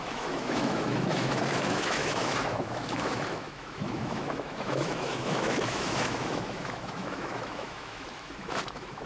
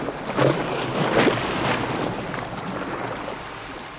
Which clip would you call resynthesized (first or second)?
first